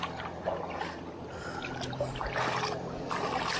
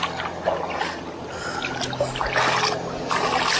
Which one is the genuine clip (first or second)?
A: second